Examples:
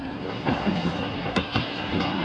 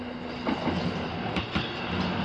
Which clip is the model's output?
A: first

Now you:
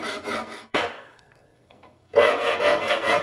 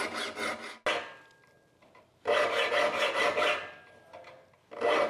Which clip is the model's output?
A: first